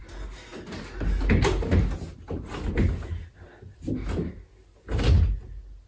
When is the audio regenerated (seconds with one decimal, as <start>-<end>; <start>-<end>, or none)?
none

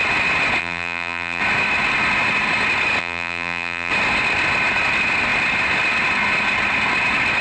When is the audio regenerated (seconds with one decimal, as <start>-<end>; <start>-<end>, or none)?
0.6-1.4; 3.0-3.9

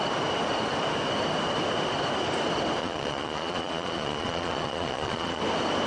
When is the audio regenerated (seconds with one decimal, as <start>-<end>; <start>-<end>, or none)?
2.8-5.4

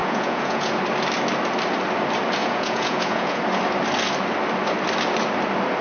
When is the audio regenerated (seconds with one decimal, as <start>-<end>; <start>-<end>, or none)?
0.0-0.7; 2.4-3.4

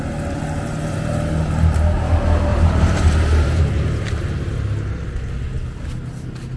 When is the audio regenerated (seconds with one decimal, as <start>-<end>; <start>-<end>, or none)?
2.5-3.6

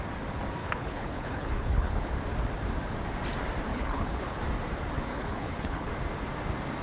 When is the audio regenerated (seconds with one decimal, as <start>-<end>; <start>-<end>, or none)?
0.6-2.1; 3.7-4.4; 5.1-5.9